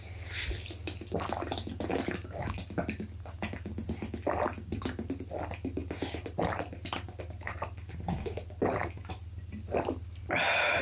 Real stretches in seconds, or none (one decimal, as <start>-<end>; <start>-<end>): 0.0-10.8